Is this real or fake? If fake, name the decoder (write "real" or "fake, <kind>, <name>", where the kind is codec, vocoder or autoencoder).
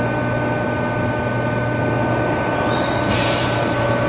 real